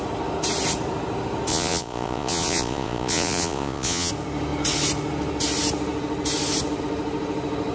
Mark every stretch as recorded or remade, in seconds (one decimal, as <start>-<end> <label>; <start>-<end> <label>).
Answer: 0.0-1.5 recorded; 1.5-4.1 remade; 4.1-7.7 recorded